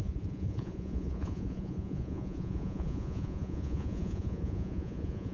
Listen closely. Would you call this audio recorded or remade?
remade